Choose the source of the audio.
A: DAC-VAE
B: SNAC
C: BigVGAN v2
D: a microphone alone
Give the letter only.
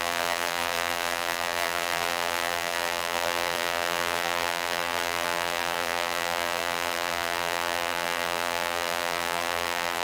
C